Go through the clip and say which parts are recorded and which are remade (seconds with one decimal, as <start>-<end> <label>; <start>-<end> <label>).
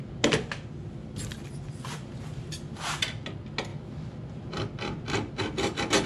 0.0-6.1 recorded